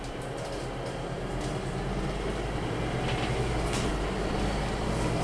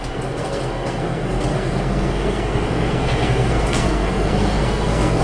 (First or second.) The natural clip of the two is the first